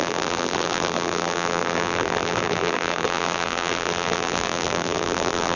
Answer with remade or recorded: remade